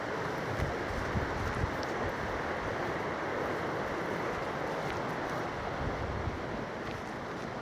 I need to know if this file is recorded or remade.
recorded